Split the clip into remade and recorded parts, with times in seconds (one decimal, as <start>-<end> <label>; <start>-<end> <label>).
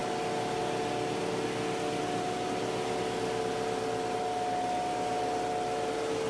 0.0-6.3 recorded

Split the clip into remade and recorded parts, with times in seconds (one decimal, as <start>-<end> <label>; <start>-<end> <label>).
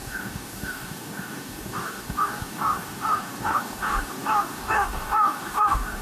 0.0-6.0 remade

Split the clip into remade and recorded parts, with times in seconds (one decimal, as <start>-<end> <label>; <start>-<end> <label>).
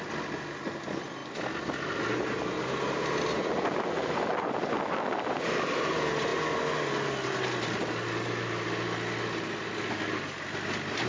0.0-11.1 recorded